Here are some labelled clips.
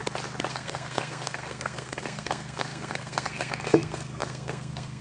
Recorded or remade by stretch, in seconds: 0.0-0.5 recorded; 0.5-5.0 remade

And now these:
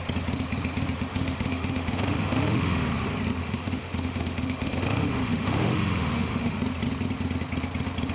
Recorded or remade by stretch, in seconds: 0.0-1.1 recorded; 1.1-2.9 remade; 2.9-3.4 recorded; 3.4-6.6 remade; 6.6-8.1 recorded

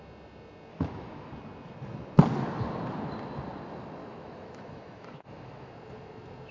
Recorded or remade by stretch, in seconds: 0.0-0.7 recorded; 0.7-1.3 remade; 1.3-4.0 recorded; 4.0-5.7 remade; 5.7-6.5 recorded

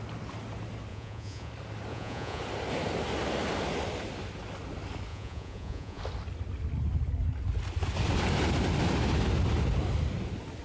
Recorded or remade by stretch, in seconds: 0.0-0.9 recorded; 0.9-1.5 remade; 1.5-1.9 recorded; 1.9-2.4 remade; 2.4-5.1 recorded; 5.1-6.0 remade; 6.0-10.6 recorded